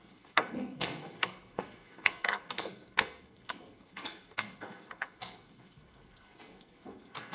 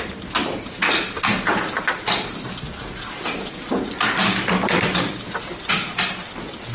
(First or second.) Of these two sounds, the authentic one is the second